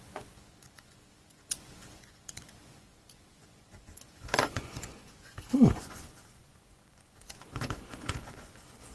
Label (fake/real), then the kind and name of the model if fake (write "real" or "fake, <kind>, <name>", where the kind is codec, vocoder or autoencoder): fake, vocoder, Vocos